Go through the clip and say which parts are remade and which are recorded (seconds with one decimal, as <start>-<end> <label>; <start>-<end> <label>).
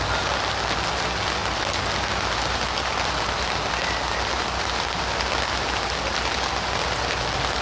0.0-7.6 recorded